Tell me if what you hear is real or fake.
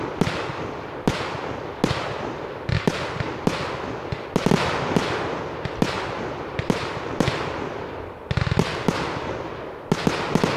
real